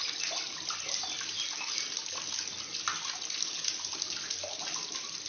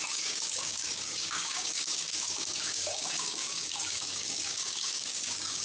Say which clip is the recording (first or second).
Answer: first